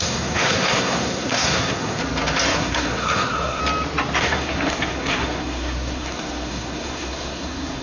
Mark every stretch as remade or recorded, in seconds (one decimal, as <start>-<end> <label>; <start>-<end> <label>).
0.0-2.0 remade; 2.0-2.5 recorded; 2.5-3.6 remade; 3.6-4.2 recorded; 4.2-7.8 remade